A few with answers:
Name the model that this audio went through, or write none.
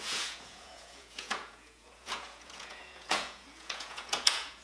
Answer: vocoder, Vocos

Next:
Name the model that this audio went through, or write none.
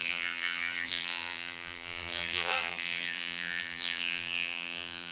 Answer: vocoder, BigVGAN v2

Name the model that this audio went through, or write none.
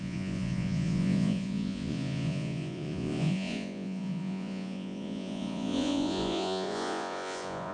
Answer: vocoder, Vocos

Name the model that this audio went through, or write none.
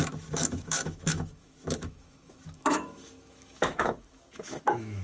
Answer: autoencoder, DAC-VAE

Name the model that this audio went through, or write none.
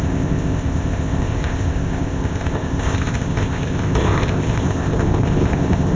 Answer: codec, ZipCodec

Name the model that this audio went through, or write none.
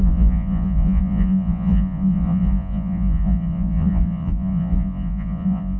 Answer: vocoder, Vocos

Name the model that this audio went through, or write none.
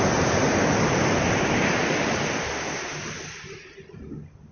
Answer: none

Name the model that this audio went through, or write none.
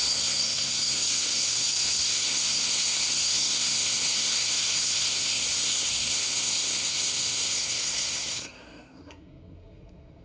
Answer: codec, SNAC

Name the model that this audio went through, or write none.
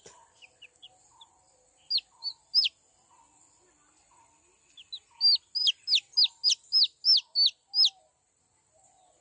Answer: none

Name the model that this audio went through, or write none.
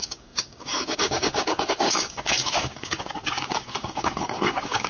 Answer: codec, DAC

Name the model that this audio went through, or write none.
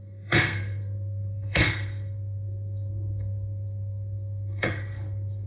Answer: codec, SNAC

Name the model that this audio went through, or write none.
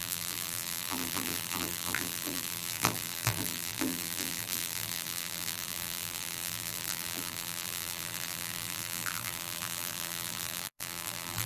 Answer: vocoder, BigVGAN v2